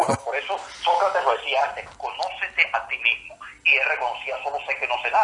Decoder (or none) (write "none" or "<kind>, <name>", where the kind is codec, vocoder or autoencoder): none